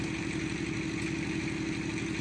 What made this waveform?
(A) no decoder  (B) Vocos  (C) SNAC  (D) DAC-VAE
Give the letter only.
A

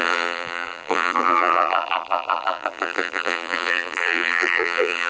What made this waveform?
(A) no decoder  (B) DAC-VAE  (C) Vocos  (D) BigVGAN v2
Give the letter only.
D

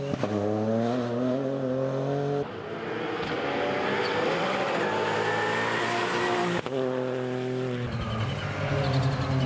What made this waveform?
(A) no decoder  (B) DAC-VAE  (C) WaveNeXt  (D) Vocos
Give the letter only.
A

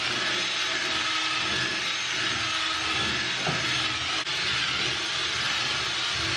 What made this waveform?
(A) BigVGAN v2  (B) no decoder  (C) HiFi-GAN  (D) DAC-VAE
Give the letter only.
B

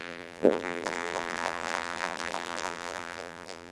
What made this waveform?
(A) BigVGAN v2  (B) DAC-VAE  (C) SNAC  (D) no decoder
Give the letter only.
A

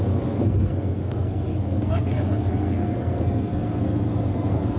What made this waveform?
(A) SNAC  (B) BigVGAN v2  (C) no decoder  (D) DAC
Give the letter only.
A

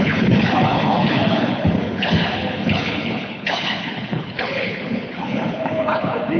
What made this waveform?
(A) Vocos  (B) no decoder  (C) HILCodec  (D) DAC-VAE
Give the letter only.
C